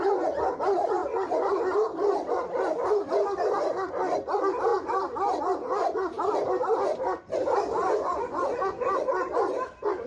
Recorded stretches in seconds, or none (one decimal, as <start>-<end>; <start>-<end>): 0.0-7.8; 8.9-10.1

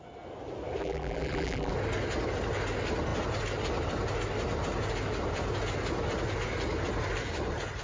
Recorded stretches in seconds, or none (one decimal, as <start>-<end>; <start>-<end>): 0.0-0.8; 1.7-7.8

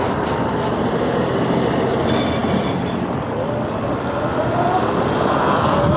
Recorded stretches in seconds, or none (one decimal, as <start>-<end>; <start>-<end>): 0.0-6.0

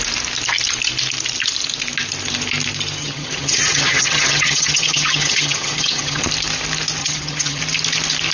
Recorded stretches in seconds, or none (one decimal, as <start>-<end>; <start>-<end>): 0.0-3.0; 6.2-7.0; 7.6-8.3

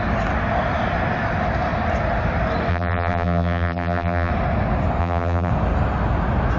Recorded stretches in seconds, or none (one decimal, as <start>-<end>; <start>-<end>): 0.0-2.7; 4.3-5.0; 5.5-6.6

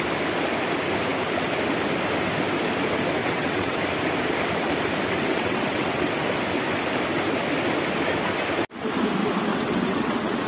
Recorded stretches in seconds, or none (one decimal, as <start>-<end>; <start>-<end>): 0.0-3.2; 3.8-5.3; 6.1-9.5

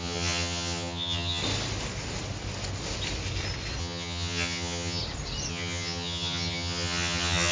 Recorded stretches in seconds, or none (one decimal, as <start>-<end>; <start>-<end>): 1.4-3.8; 5.0-5.5